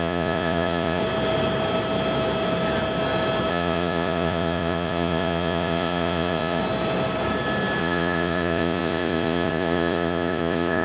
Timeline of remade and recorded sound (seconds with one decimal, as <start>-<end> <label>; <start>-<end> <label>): 0.0-1.0 remade; 1.0-3.5 recorded; 3.5-6.6 remade; 6.6-7.8 recorded; 7.8-10.8 remade

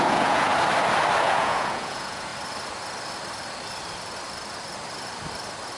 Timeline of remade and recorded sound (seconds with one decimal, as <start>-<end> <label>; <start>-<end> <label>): 0.0-0.5 remade; 0.5-1.2 recorded; 1.2-2.3 remade; 2.3-5.8 recorded

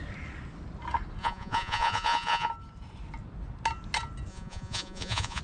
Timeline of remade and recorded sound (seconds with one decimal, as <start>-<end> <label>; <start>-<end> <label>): 0.0-1.2 recorded; 1.2-2.5 remade; 2.5-4.3 recorded; 4.3-5.4 remade

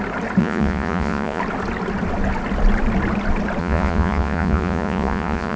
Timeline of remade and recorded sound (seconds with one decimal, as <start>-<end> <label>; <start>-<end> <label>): 0.0-0.4 recorded; 0.4-1.4 remade; 1.4-3.6 recorded; 3.6-5.6 remade